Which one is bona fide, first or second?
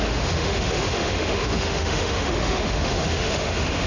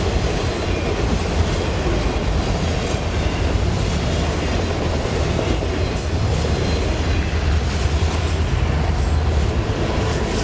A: second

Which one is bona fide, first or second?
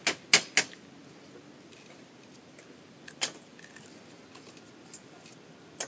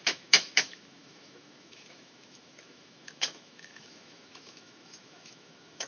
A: first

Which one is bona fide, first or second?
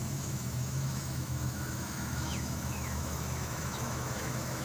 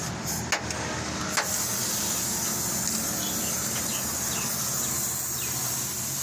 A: second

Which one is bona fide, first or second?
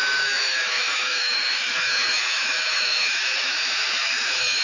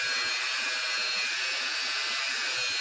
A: second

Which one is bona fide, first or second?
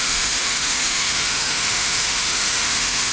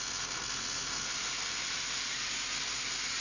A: second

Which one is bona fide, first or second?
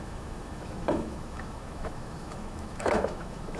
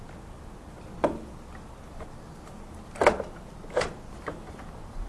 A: second